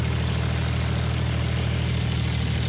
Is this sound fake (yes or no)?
no